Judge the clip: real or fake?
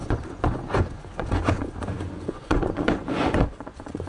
fake